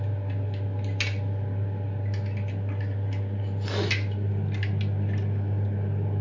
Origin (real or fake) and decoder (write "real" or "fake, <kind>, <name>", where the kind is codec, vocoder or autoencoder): real